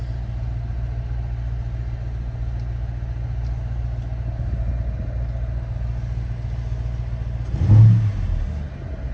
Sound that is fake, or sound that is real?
real